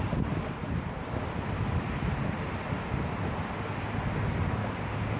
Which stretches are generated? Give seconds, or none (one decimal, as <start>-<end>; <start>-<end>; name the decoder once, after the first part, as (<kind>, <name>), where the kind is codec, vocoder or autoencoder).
0.6-3.7 (vocoder, BigVGAN v2)